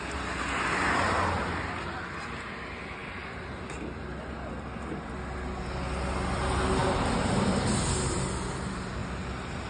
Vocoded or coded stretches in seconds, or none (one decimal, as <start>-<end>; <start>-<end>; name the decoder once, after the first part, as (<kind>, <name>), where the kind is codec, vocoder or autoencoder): none